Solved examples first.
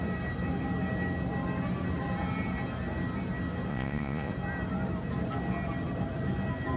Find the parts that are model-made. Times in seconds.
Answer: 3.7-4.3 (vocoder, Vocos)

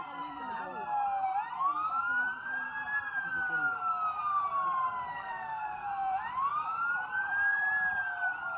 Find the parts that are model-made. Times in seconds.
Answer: 5.1-6.2 (codec, SNAC)

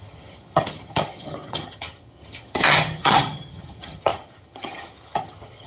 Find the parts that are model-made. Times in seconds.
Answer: 0.0-5.7 (vocoder, HiFi-GAN)